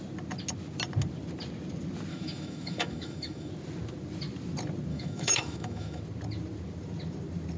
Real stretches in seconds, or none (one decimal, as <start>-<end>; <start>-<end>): 0.0-2.1; 3.5-4.9; 6.0-7.6